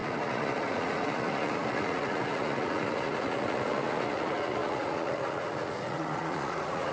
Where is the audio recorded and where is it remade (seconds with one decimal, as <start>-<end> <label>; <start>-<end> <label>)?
0.0-6.9 remade